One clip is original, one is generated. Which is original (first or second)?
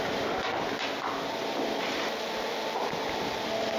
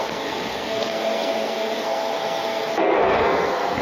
first